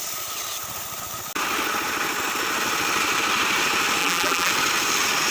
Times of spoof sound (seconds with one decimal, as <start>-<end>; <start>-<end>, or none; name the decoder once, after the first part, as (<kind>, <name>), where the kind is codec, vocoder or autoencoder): 4.0-4.5 (vocoder, BigVGAN v2)